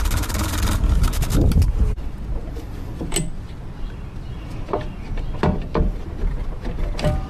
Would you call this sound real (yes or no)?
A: yes